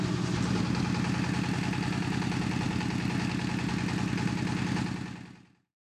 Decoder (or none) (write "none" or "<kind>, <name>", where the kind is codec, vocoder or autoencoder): none